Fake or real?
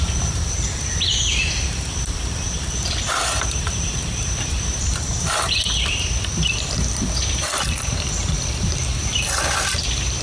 fake